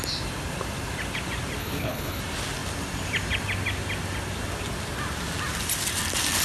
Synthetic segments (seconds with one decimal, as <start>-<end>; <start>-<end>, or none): 1.6-2.2